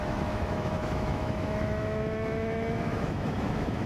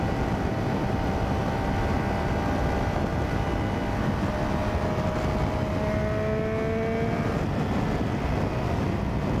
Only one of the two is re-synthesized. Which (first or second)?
first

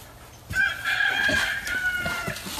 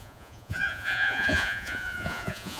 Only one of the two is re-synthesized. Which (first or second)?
second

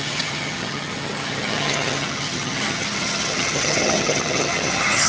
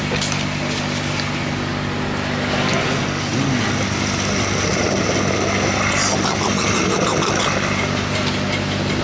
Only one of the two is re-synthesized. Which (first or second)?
first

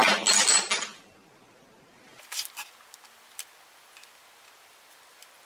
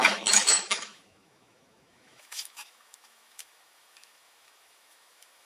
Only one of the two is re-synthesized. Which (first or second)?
second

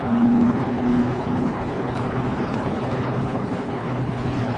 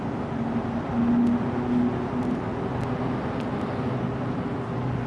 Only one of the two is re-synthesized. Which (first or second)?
first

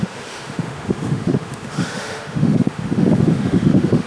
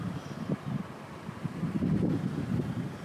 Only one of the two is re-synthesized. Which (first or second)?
first